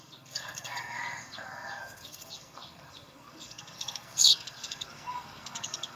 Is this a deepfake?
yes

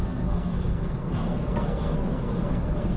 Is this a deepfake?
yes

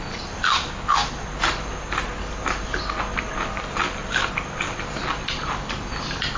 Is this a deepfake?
no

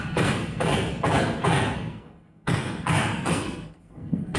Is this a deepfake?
yes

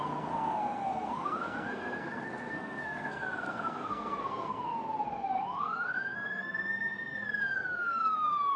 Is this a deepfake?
yes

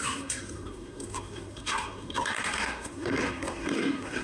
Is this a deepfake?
yes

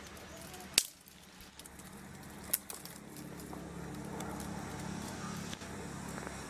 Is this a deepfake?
no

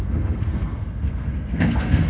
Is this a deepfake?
yes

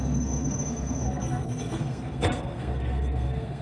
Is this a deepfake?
yes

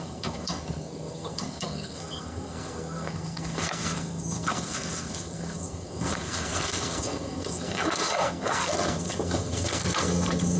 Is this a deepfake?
yes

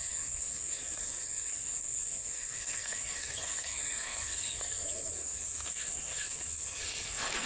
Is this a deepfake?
yes